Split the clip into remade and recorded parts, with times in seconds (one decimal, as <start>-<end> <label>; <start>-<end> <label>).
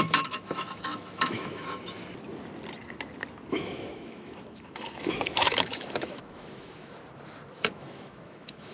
0.0-2.0 remade; 2.0-3.5 recorded; 3.5-7.0 remade; 7.0-7.5 recorded; 7.5-8.7 remade